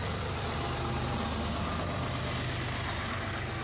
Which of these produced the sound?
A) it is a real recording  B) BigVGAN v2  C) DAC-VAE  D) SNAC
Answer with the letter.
A